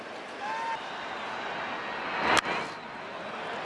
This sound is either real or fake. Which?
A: real